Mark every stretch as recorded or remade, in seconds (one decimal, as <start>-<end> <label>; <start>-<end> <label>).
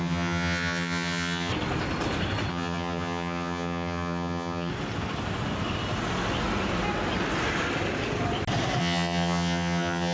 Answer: 0.0-1.5 remade; 1.5-2.5 recorded; 2.5-4.7 remade; 4.7-8.8 recorded; 8.8-10.1 remade